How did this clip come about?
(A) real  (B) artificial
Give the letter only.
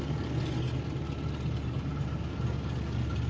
A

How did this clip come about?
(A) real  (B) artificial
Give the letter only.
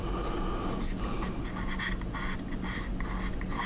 A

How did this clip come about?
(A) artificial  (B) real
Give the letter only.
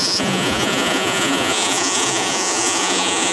A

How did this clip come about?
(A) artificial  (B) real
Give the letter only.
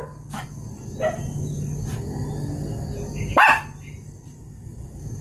B